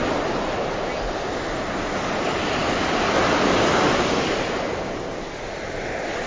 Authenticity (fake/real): real